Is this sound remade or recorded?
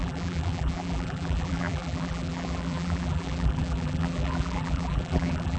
remade